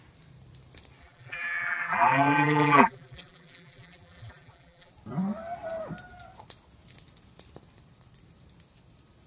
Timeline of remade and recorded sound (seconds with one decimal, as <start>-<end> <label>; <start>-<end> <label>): 0.0-1.0 recorded; 1.0-4.9 remade; 4.9-9.3 recorded